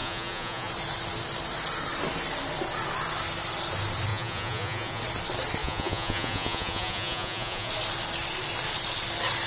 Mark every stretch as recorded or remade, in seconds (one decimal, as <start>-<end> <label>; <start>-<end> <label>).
0.0-0.7 remade; 0.7-4.1 recorded; 4.1-5.0 remade; 5.0-5.6 recorded; 5.6-7.7 remade; 7.7-9.5 recorded